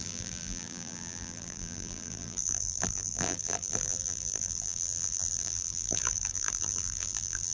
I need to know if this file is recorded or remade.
remade